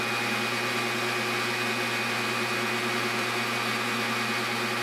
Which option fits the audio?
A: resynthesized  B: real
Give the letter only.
B